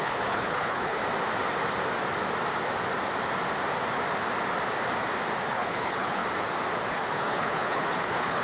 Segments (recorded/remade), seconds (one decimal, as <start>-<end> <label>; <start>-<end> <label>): 0.0-1.0 remade; 1.0-5.4 recorded; 5.4-6.2 remade; 6.2-6.9 recorded; 6.9-8.4 remade